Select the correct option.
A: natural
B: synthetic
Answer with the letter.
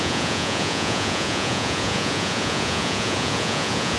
B